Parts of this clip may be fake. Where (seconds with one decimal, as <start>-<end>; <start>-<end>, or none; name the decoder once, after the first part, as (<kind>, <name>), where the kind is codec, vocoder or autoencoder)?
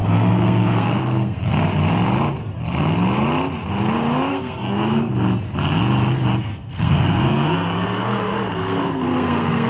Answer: 0.0-1.4 (codec, SNAC); 4.3-5.1; 6.4-9.7